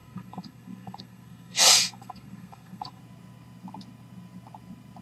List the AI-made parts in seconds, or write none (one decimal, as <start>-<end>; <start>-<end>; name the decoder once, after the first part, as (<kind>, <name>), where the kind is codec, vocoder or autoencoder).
0.0-3.0 (codec, SNAC)